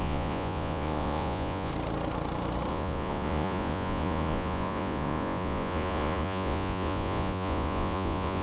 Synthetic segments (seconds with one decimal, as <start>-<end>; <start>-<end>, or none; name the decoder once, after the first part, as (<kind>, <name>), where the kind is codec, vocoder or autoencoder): 0.0-1.7 (vocoder, Vocos); 2.7-8.4